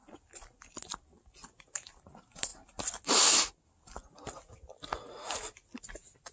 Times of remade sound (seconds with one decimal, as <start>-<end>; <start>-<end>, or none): none